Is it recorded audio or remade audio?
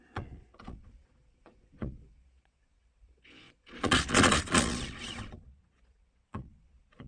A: remade